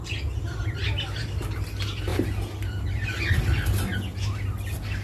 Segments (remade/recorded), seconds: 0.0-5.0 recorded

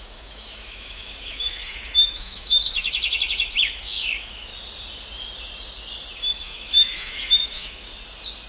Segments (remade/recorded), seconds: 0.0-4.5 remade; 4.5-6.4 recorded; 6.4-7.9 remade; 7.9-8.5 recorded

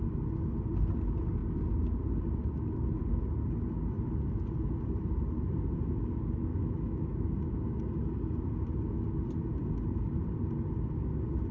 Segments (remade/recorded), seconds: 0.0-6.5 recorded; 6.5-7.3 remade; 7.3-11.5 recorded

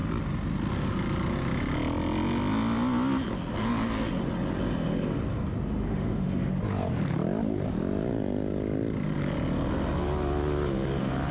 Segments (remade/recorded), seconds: 0.0-5.8 recorded; 5.8-6.5 remade; 6.5-11.3 recorded

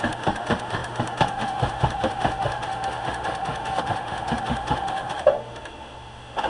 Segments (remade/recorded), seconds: 0.0-6.5 remade

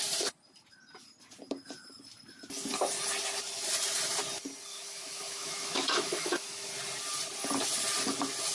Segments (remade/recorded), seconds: 0.0-4.7 recorded; 4.7-6.7 remade; 6.7-8.5 recorded